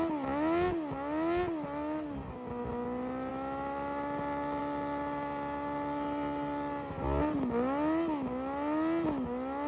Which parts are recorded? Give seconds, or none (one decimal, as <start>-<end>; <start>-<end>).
0.0-9.7